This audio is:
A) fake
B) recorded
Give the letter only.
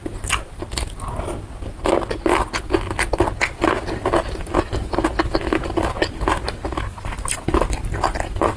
B